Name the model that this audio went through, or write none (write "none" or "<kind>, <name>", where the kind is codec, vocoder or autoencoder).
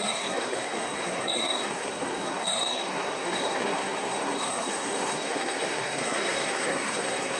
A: codec, SNAC